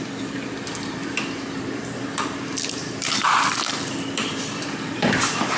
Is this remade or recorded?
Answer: remade